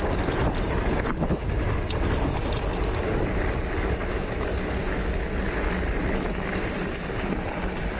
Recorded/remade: recorded